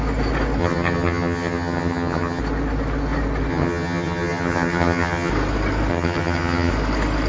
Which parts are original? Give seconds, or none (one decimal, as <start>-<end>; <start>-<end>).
0.0-0.6; 2.4-3.5; 5.3-5.9; 6.7-7.3